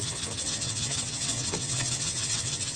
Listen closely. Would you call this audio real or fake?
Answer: fake